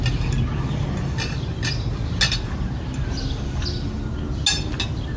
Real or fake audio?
real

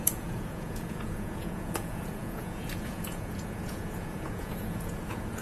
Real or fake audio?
fake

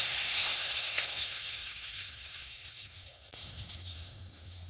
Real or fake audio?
fake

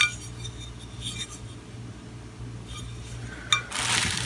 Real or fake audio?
real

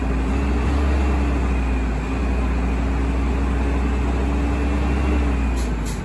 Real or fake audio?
real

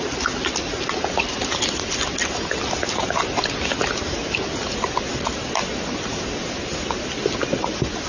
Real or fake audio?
real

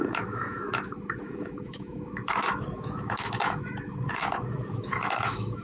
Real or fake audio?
fake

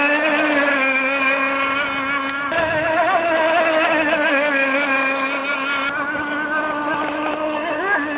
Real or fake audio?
real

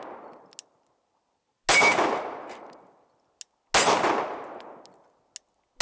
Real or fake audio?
real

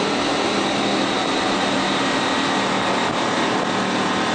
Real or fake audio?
real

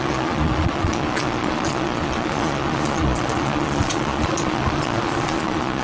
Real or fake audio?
fake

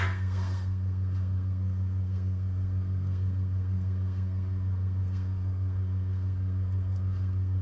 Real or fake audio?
fake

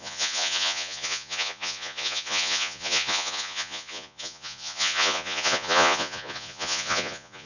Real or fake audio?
fake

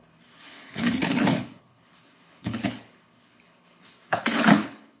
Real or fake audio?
fake